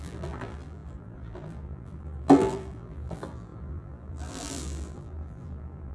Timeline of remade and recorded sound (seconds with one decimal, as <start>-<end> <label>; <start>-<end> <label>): 0.0-5.9 remade